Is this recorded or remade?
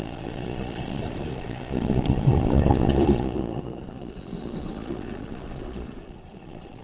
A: remade